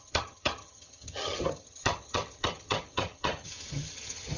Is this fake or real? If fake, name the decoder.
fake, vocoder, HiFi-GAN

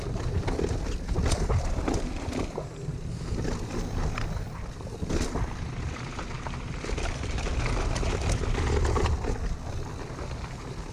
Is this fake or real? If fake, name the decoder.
real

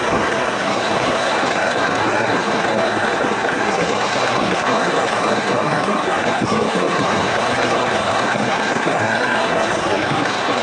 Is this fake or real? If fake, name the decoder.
fake, codec, SNAC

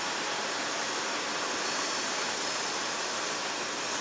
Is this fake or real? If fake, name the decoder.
real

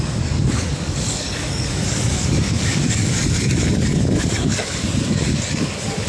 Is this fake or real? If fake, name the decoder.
fake, codec, DAC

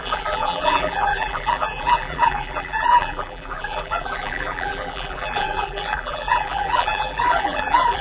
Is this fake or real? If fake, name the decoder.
fake, vocoder, BigVGAN v2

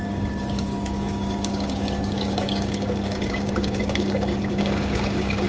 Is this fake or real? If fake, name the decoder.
fake, codec, DAC